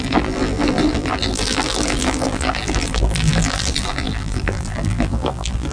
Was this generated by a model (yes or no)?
yes